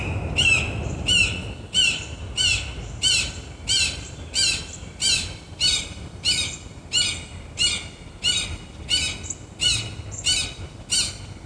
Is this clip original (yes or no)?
yes